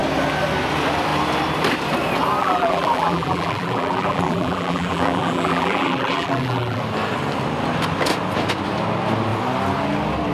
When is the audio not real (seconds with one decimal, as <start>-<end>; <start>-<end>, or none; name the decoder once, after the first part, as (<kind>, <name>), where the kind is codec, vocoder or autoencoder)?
2.4-6.8 (vocoder, BigVGAN v2)